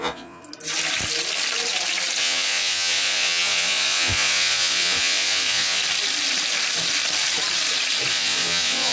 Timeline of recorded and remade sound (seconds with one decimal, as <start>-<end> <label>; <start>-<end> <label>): 0.0-0.4 remade; 0.4-2.2 recorded; 2.2-5.8 remade; 5.8-8.1 recorded; 8.1-8.9 remade

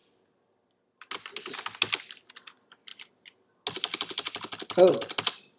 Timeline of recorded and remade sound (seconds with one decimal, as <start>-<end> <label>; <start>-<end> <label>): 0.0-5.6 recorded

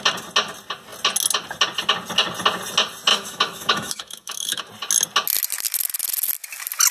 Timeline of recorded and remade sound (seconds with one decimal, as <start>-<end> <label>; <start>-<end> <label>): 0.0-3.1 recorded; 3.1-4.6 remade; 4.6-6.9 recorded

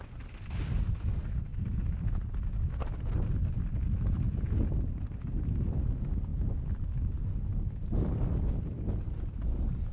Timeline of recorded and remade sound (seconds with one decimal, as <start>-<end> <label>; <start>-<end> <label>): 0.0-9.9 recorded

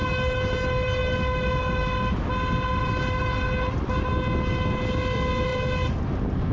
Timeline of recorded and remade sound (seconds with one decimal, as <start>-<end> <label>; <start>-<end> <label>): 0.0-6.5 recorded

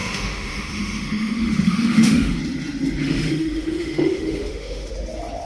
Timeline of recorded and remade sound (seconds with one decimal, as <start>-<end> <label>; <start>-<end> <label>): 0.0-2.4 remade; 2.4-3.0 recorded; 3.0-4.9 remade; 4.9-5.5 recorded

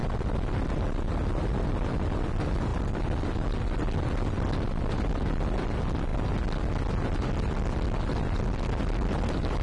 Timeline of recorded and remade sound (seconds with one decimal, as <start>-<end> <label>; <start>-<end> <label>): 0.0-9.6 recorded

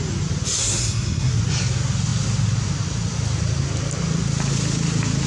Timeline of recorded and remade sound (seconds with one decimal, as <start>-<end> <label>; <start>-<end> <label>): 0.0-0.6 recorded; 0.6-1.3 remade; 1.3-5.3 recorded